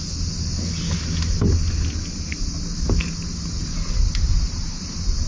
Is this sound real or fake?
real